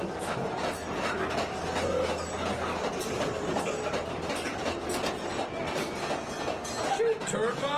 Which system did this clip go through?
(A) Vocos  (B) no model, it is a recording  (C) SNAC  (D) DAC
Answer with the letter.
B